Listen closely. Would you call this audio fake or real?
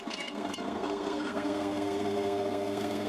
fake